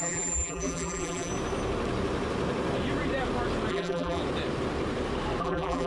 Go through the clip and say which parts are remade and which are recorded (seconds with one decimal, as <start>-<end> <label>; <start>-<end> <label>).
0.0-1.3 remade; 1.3-3.7 recorded; 3.7-4.2 remade; 4.2-5.4 recorded; 5.4-5.9 remade